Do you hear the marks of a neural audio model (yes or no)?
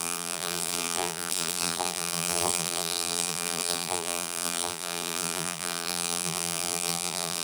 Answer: yes